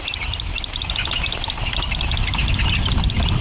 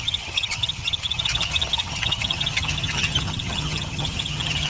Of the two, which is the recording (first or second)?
first